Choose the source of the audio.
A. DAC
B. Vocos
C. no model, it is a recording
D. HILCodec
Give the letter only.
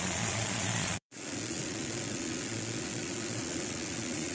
B